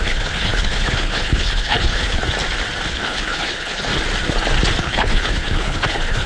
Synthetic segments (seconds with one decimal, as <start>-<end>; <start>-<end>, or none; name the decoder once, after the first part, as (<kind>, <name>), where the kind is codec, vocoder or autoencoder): 0.0-2.2 (codec, HILCodec); 2.9-3.9; 4.8-6.3